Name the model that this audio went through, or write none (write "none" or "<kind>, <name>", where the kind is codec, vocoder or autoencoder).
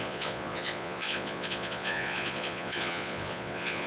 vocoder, Vocos